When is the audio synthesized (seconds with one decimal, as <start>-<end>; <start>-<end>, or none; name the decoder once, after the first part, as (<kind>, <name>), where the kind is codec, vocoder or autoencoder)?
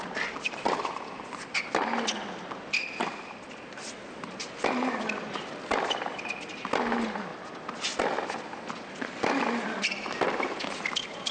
none